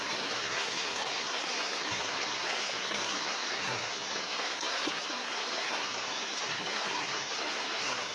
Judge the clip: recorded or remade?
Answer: remade